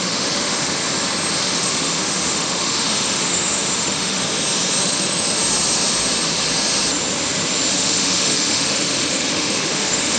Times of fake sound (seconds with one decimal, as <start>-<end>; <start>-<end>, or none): 0.0-0.8; 1.3-4.2; 4.8-5.4; 7.7-10.2